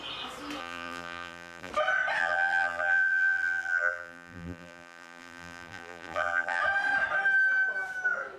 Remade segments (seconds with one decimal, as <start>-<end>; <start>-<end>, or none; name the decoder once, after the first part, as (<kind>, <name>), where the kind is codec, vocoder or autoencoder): 0.6-1.7 (vocoder, BigVGAN v2); 2.2-6.6